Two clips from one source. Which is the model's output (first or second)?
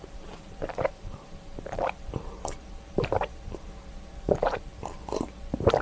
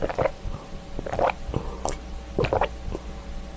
first